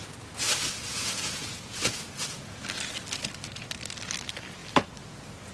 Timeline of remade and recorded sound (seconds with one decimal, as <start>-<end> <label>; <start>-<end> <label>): 0.0-0.9 recorded; 0.9-2.6 remade; 2.6-5.5 recorded